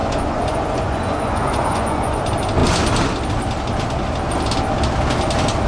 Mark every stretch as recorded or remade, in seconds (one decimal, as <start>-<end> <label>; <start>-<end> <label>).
0.0-2.2 remade; 2.2-5.7 recorded